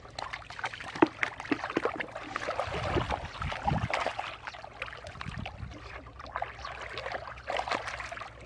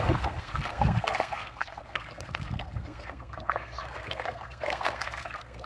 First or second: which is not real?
second